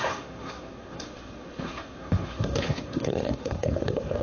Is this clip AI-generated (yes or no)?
yes